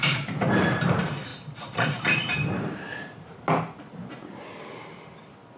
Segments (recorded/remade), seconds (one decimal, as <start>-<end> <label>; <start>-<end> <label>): 0.0-1.3 recorded; 1.3-3.4 remade; 3.4-5.6 recorded